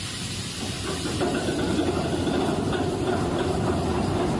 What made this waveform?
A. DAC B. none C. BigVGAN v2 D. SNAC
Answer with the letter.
B